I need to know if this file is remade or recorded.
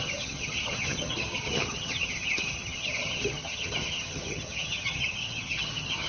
remade